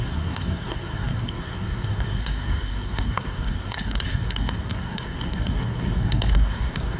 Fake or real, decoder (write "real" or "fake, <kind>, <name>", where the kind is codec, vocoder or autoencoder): fake, codec, SNAC